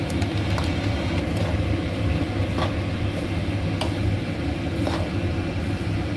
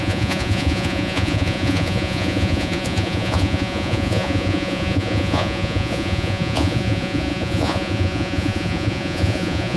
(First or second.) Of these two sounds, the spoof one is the second